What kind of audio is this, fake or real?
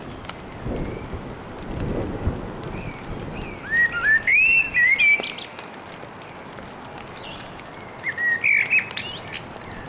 real